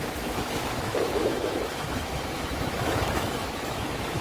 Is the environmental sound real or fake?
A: fake